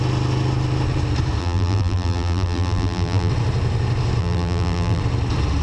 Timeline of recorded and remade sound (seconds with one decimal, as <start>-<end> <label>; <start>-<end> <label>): 0.0-1.4 recorded; 1.4-3.3 remade; 3.3-4.2 recorded; 4.2-5.0 remade; 5.0-5.6 recorded